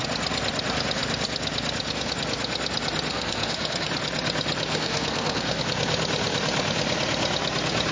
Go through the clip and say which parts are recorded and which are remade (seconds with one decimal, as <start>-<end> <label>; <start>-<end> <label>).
0.0-3.1 recorded; 3.1-3.9 remade; 3.9-4.7 recorded; 4.7-5.6 remade; 5.6-7.9 recorded